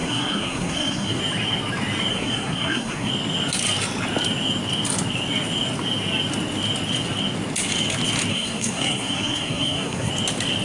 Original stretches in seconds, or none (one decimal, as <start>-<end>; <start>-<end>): 1.2-2.1; 3.1-8.3; 10.1-10.6